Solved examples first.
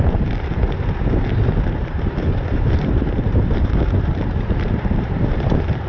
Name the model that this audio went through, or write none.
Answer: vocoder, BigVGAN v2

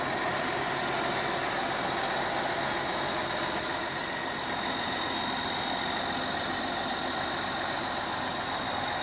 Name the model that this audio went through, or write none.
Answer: none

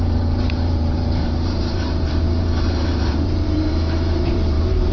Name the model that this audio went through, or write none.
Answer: vocoder, BigVGAN v2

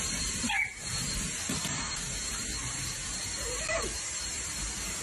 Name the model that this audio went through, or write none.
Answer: vocoder, BigVGAN v2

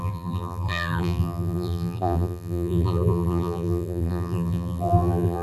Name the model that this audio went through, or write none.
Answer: vocoder, BigVGAN v2